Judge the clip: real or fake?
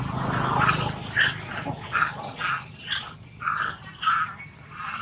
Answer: real